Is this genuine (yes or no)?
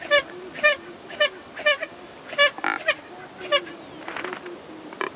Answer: yes